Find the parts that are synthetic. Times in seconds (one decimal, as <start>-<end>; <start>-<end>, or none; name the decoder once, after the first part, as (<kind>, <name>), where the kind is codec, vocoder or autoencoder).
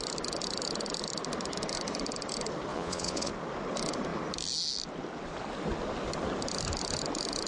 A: 2.7-3.3 (vocoder, Vocos)